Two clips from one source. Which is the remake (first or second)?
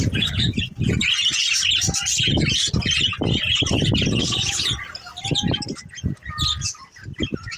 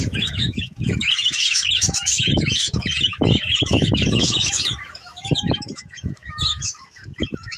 second